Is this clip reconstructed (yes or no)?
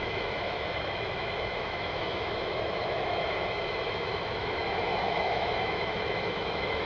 yes